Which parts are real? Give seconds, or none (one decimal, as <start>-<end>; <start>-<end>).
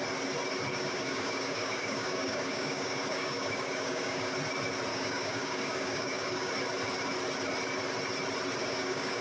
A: 0.0-0.7; 4.3-4.9; 6.5-8.6